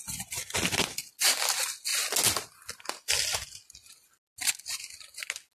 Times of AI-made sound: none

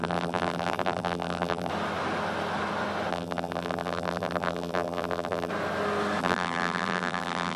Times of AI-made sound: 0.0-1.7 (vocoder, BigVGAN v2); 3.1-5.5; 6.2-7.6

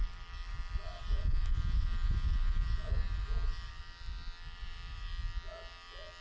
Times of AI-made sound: 0.0-5.1 (vocoder, BigVGAN v2)

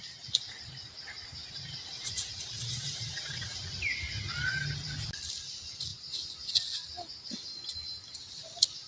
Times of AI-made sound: 1.4-3.8 (vocoder, BigVGAN v2); 5.9-6.5

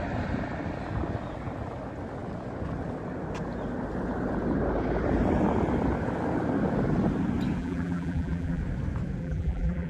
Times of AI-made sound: 7.6-8.6 (vocoder, BigVGAN v2); 9.2-9.9

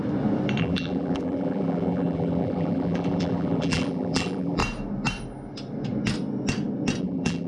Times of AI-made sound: 0.6-4.6 (vocoder, BigVGAN v2); 7.0-7.5

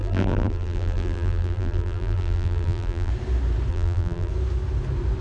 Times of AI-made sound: 0.0-3.1 (vocoder, BigVGAN v2); 3.7-4.3

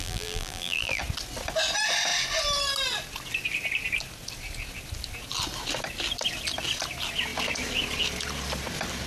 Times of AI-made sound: 0.0-1.0 (vocoder, BigVGAN v2)